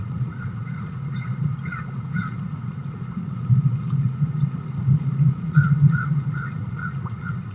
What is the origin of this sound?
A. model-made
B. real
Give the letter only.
A